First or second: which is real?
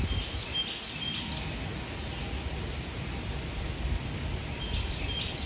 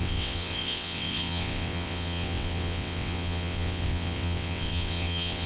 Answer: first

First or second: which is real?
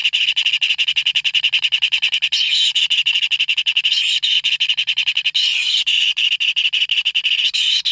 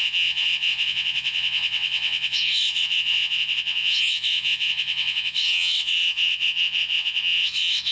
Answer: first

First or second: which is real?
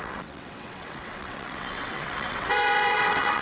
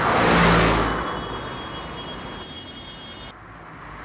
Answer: second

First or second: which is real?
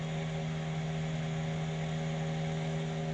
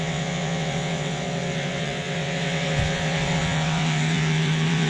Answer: first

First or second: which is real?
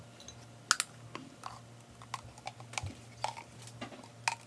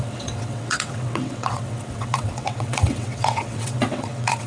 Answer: first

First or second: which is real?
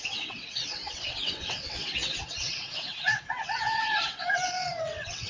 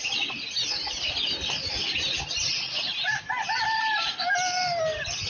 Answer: second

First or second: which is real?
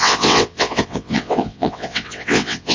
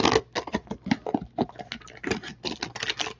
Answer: second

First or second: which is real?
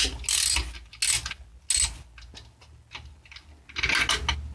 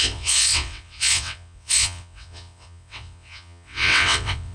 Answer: first